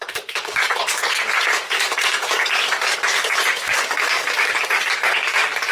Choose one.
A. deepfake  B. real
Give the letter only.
A